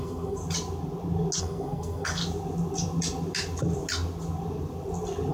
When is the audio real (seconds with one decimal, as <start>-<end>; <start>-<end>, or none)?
0.4-1.4; 2.2-5.3